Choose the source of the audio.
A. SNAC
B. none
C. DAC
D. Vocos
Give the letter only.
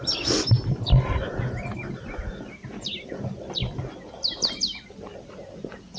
B